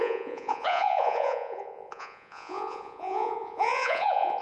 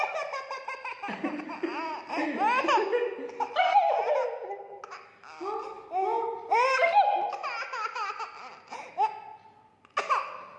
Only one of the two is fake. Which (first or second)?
first